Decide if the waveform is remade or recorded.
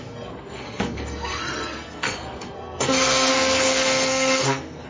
remade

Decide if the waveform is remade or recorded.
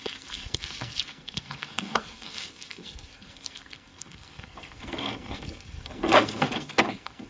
remade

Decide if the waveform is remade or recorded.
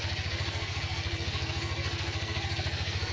remade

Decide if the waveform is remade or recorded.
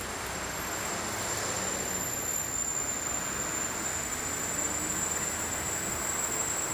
recorded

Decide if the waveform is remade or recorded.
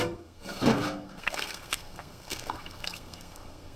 remade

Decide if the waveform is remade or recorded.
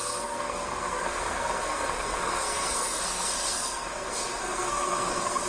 remade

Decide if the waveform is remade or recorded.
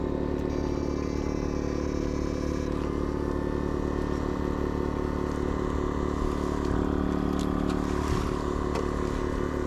recorded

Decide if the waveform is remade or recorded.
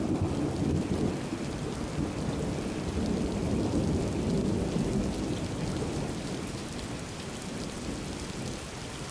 recorded